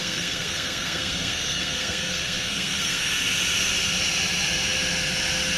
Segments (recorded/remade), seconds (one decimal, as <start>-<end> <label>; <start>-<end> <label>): 0.0-3.1 remade; 3.1-5.6 recorded